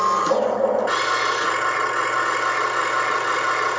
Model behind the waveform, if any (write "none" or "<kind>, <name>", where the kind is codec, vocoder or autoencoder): none